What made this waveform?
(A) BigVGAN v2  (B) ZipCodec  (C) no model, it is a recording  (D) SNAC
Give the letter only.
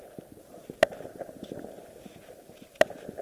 C